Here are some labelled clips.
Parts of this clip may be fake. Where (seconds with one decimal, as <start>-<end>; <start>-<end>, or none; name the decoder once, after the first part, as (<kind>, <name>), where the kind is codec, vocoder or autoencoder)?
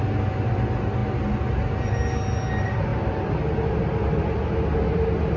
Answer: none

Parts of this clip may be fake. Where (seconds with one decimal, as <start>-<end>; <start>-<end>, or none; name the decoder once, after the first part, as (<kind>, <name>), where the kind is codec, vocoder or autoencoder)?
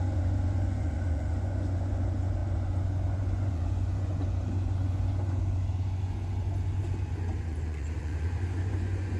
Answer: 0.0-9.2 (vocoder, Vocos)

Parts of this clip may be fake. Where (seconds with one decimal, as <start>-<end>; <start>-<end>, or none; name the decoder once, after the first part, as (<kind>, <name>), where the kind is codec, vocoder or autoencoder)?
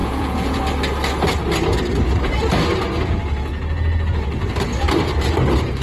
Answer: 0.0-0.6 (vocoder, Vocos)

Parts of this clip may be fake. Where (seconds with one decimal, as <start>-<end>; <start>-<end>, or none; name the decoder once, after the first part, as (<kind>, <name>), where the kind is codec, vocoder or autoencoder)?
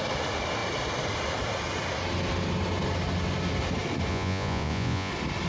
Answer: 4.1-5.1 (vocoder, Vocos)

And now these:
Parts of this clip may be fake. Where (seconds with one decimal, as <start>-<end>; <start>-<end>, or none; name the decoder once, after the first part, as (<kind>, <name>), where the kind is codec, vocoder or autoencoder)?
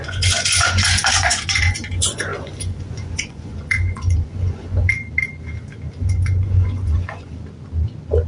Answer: 0.0-4.9 (vocoder, Vocos); 6.0-7.3